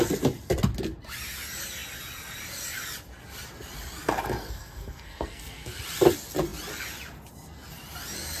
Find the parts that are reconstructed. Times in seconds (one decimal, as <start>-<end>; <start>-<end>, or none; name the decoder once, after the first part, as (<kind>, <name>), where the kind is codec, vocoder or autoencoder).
4.4-5.8 (codec, SNAC)